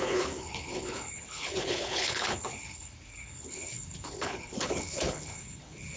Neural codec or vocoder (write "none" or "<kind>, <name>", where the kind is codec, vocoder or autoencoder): codec, HILCodec